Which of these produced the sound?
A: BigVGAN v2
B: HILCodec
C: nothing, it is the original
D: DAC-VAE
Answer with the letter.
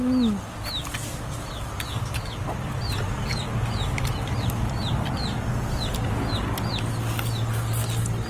C